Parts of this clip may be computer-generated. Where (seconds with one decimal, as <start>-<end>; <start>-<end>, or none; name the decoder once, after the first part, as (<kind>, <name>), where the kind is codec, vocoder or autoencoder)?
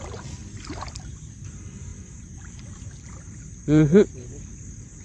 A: 0.0-0.4 (vocoder, BigVGAN v2); 0.9-5.0